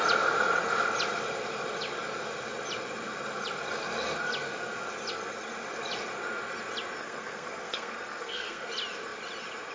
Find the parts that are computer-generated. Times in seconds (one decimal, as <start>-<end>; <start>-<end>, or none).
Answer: 7.0-8.7